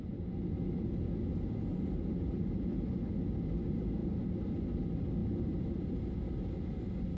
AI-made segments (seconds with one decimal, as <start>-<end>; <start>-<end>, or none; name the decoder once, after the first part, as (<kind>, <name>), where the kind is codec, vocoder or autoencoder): 1.7-2.9 (vocoder, BigVGAN v2); 4.0-4.5